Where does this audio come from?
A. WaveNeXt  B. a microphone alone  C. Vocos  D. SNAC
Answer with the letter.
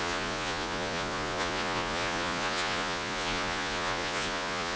C